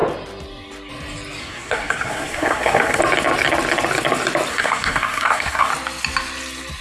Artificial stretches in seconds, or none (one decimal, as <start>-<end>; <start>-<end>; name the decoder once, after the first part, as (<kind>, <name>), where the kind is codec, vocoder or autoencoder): 1.4-3.0 (codec, SNAC); 4.5-5.7